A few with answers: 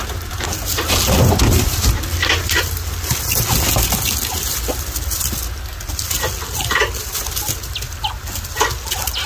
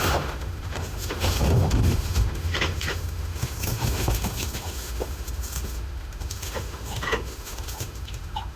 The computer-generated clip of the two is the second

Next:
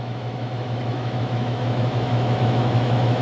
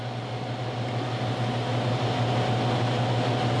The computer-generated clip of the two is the first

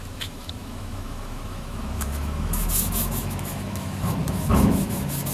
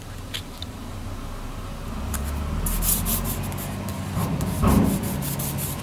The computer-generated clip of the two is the first